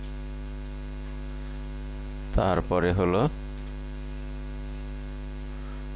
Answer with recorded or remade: recorded